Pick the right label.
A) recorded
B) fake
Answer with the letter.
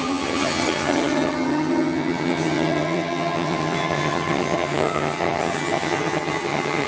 B